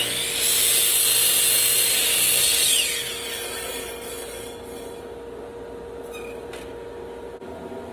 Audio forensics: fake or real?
real